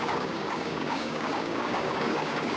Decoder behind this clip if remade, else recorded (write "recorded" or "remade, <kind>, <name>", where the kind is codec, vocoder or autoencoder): remade, codec, DAC